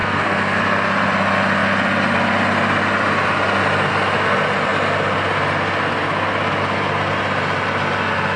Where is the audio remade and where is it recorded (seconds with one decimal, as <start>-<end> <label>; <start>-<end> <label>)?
0.0-0.6 remade; 0.6-8.4 recorded

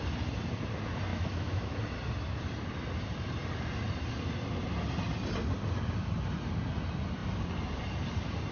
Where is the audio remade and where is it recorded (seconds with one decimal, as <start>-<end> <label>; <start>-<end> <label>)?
0.0-1.1 recorded; 1.1-1.8 remade; 1.8-8.5 recorded